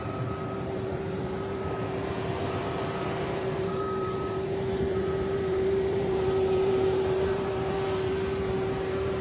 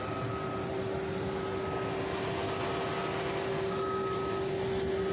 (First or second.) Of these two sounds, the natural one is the second